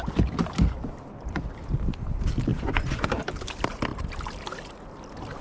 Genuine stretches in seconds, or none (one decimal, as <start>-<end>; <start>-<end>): 0.0-2.5; 3.1-5.4